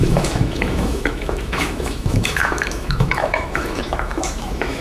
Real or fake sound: fake